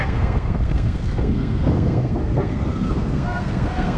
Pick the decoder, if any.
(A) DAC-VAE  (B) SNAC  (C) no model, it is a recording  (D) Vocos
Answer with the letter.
B